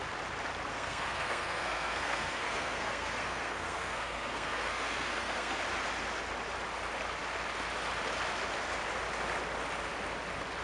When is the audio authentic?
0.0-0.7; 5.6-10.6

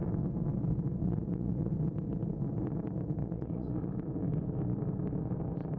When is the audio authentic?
0.0-1.0; 1.7-3.2; 3.9-5.8